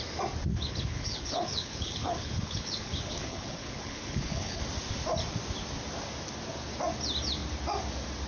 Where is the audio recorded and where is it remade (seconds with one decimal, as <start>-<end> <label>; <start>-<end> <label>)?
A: 0.0-0.5 recorded; 0.5-4.6 remade; 4.6-8.3 recorded